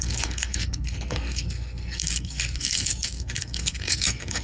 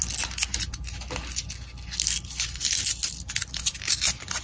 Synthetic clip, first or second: first